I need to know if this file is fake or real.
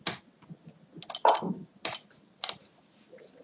real